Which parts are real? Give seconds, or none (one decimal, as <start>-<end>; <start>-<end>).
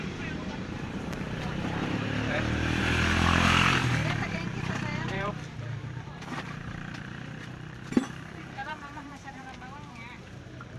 none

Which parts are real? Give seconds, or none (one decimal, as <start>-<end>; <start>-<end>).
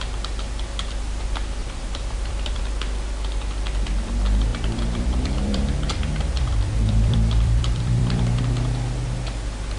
0.0-1.6; 2.6-4.5; 8.4-9.8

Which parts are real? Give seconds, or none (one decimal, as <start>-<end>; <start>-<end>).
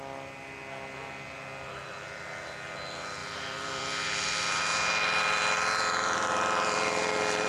0.0-3.2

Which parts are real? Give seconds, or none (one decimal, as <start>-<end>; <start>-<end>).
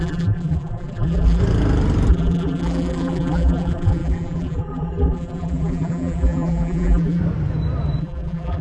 1.4-2.1; 7.2-8.0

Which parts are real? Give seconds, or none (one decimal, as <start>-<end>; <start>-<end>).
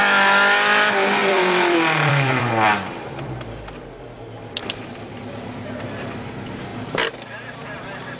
0.0-1.2; 6.1-6.7